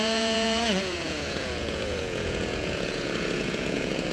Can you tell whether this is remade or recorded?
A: remade